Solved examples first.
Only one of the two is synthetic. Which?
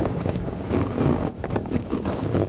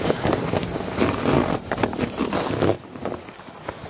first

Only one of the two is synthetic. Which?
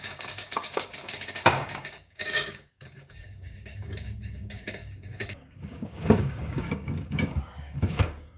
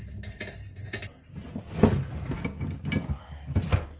first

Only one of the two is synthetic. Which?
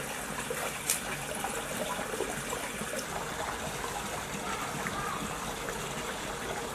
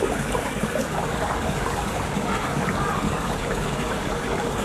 second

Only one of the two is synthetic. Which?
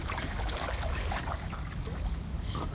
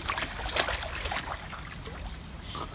first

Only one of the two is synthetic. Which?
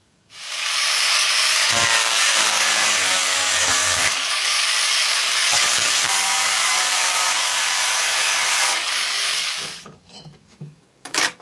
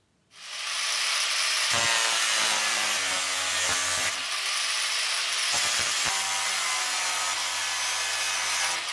first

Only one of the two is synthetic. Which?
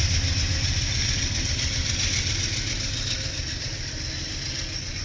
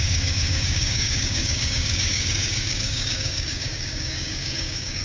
second